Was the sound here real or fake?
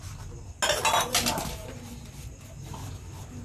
real